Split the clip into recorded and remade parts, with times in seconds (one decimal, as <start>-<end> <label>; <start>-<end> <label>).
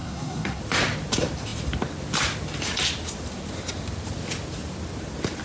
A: 0.0-0.6 remade; 0.6-5.4 recorded